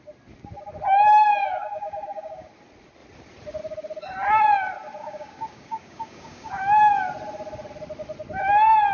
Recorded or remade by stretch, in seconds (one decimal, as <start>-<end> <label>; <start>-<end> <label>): 0.0-1.4 recorded; 1.4-2.5 remade; 2.5-5.0 recorded; 5.0-6.6 remade; 6.6-8.9 recorded